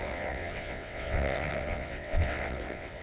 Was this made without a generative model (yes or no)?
no